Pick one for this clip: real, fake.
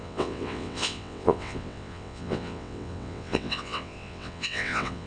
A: fake